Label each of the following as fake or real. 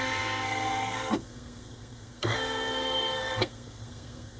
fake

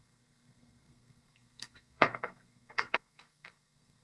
fake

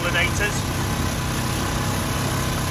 real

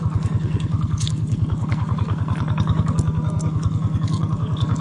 fake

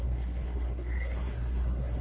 fake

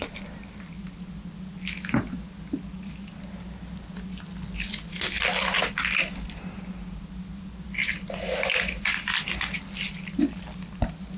real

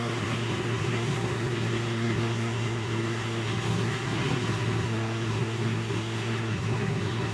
fake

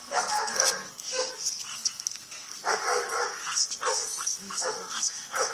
fake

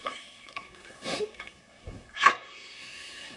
fake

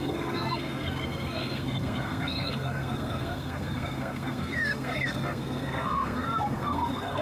fake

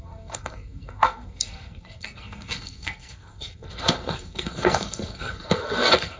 fake